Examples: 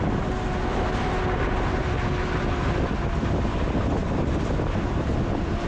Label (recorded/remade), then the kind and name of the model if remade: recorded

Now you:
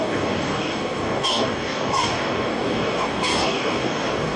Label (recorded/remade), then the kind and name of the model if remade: remade, codec, DAC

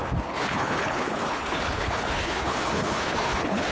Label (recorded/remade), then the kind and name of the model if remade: remade, codec, HILCodec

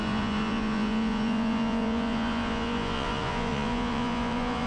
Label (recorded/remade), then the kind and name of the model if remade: remade, vocoder, Vocos